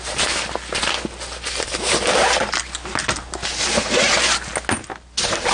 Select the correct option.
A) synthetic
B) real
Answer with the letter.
B